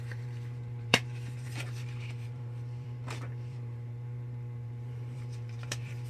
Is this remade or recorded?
remade